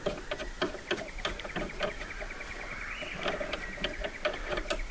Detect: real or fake real